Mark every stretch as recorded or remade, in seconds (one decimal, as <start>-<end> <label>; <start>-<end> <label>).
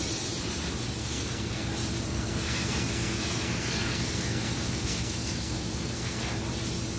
0.0-1.0 recorded; 1.0-1.7 remade; 1.7-2.1 recorded; 2.1-6.3 remade; 6.3-7.0 recorded